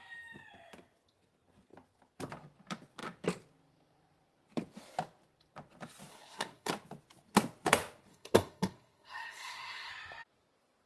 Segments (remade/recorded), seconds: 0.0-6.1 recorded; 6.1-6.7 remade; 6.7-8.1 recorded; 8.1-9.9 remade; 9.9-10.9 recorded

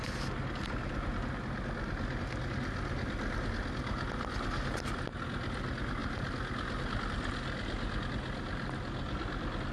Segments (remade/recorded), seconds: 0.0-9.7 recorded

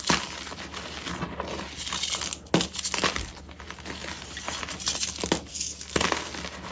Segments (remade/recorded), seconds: 0.0-5.5 recorded; 5.5-6.3 remade; 6.3-6.7 recorded

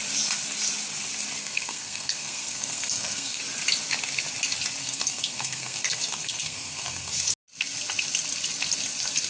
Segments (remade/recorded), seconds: 0.0-1.4 recorded; 1.4-3.4 remade; 3.4-4.8 recorded; 4.8-7.1 remade; 7.1-9.3 recorded